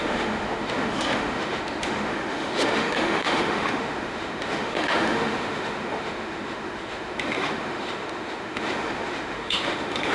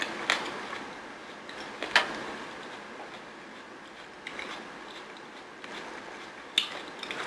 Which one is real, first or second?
second